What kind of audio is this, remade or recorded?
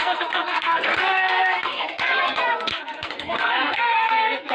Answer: remade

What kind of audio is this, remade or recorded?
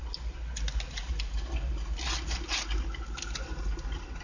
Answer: recorded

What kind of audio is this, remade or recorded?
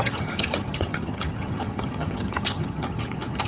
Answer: remade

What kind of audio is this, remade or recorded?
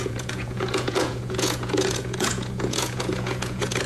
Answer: remade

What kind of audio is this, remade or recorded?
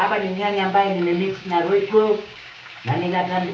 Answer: remade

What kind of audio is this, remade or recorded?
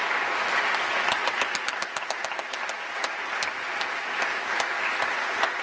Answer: recorded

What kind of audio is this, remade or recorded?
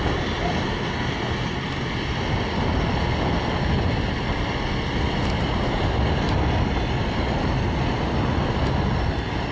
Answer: recorded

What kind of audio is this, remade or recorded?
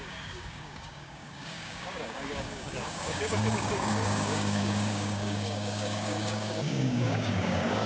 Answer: remade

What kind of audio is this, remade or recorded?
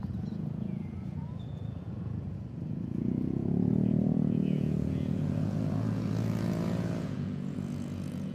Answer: remade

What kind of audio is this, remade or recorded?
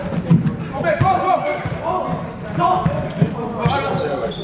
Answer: recorded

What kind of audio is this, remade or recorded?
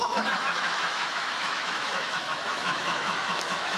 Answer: remade